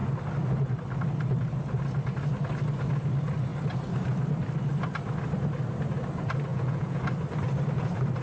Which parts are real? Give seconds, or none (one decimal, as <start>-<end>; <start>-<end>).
0.0-6.5; 7.0-8.2